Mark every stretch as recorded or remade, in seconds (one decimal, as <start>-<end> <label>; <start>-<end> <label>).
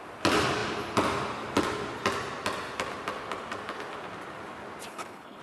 0.0-4.9 recorded; 4.9-5.4 remade